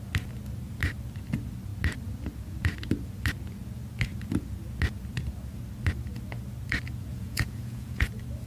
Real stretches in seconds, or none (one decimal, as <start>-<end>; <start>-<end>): 0.0-7.1; 8.1-8.5